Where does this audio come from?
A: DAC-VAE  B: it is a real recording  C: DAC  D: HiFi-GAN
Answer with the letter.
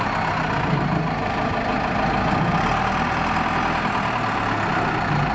B